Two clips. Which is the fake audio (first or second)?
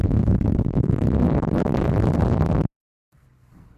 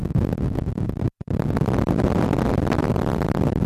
first